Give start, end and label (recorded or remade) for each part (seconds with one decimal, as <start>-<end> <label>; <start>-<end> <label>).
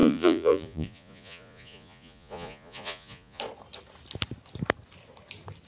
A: 0.0-3.4 remade; 3.4-5.7 recorded